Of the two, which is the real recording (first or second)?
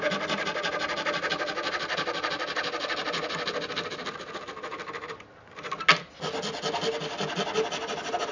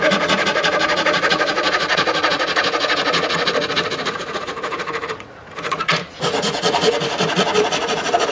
first